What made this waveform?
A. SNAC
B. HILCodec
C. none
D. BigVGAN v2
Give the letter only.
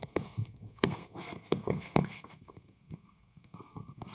A